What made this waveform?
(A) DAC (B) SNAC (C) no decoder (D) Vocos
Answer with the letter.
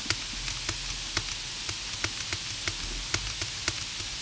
C